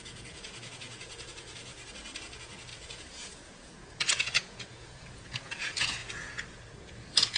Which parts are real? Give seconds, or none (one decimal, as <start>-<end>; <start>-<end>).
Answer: 1.7-2.2